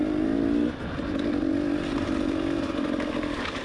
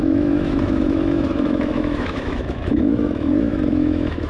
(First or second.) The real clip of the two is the first